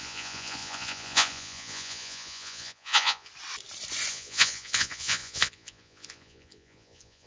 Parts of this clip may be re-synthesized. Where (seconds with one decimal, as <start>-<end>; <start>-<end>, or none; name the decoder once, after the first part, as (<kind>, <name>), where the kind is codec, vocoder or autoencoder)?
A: 0.0-3.3 (vocoder, Vocos); 4.1-7.3

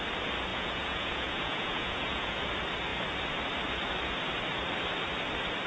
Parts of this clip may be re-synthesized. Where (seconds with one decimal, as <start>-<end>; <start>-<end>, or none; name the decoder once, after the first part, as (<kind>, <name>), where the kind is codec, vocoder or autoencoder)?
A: 0.5-2.5 (vocoder, Vocos)

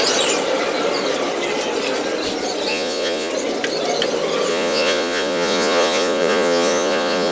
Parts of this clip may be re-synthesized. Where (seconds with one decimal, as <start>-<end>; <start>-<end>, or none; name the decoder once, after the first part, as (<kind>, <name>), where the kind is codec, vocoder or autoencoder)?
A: 2.7-3.3 (vocoder, Vocos); 4.5-7.3

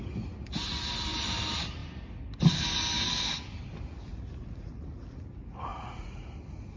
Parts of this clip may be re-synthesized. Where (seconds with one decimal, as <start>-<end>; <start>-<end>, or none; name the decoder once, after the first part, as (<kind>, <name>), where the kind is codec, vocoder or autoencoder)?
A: 4.1-4.7 (vocoder, Vocos); 5.7-6.2

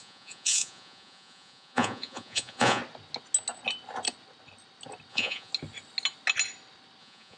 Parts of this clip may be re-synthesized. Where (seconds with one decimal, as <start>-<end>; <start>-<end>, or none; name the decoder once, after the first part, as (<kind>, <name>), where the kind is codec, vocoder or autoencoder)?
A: 0.0-2.8 (vocoder, Vocos); 5.1-5.5; 7.0-7.4

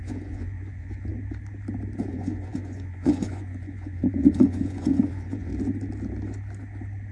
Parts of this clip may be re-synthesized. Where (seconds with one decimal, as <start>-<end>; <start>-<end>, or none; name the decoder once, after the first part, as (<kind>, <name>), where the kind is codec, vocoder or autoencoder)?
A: 0.0-1.1 (vocoder, Vocos); 2.1-5.5